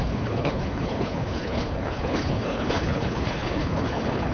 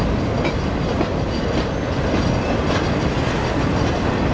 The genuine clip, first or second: second